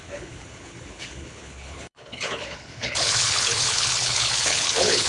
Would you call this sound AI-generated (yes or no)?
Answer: yes